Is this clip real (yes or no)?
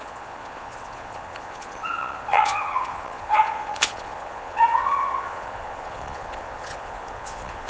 no